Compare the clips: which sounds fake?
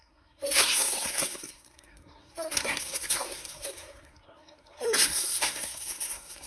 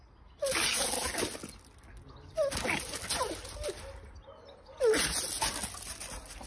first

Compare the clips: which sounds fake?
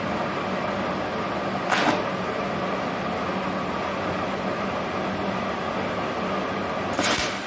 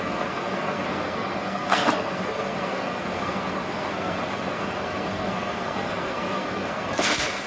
second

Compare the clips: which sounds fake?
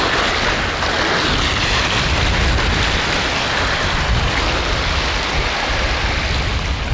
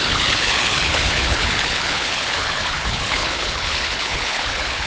second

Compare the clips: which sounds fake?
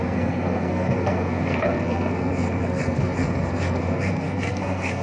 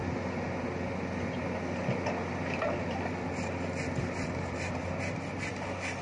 first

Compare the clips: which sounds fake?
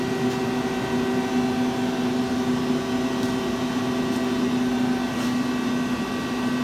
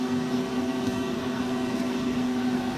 second